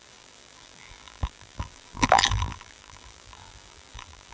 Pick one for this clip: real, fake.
fake